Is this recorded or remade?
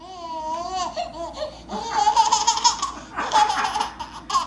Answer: recorded